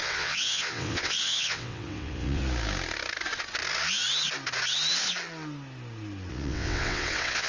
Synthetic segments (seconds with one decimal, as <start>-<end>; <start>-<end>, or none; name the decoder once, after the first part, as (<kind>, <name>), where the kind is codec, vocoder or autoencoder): 0.0-2.4 (vocoder, WaveNeXt); 6.3-7.5